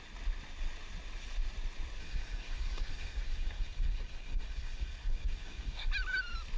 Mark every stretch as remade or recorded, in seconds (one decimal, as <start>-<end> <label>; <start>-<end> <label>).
0.0-2.0 recorded; 2.0-5.9 remade; 5.9-6.6 recorded